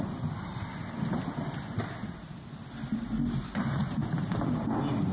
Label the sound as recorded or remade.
recorded